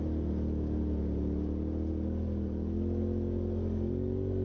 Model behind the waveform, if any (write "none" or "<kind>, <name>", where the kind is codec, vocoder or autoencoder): none